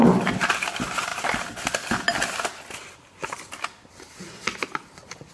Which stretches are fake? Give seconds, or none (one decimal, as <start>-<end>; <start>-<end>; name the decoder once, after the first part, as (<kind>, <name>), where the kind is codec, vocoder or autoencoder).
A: 0.0-0.5 (vocoder, BigVGAN v2)